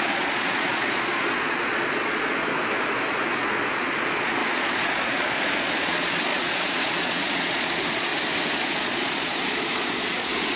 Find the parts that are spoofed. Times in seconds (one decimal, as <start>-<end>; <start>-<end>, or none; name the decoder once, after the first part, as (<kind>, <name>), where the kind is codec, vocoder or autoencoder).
0.0-2.5 (vocoder, Vocos); 3.3-8.1; 8.6-10.6